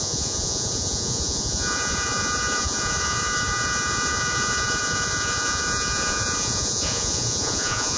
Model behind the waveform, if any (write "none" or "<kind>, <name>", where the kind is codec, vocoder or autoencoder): vocoder, Vocos